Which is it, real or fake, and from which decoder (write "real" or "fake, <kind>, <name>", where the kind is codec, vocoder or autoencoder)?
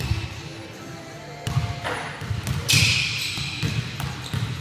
real